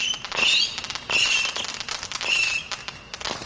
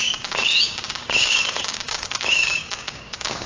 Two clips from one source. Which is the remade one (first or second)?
second